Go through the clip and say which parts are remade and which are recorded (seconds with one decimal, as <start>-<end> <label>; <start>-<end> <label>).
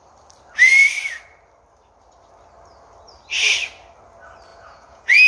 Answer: 0.0-4.5 recorded; 4.5-5.3 remade